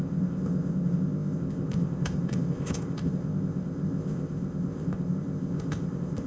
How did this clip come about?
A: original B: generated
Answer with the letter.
B